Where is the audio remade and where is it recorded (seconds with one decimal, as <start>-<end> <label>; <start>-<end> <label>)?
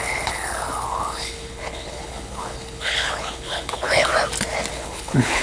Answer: 0.0-4.1 remade; 4.1-4.7 recorded; 4.7-5.4 remade